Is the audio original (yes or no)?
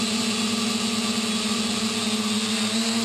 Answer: yes